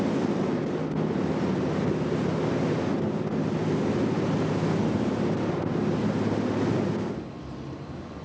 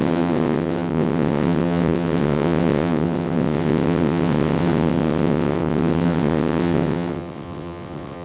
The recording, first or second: first